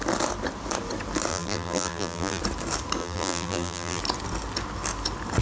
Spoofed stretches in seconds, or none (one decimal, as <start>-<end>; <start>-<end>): 1.3-2.4; 3.0-4.0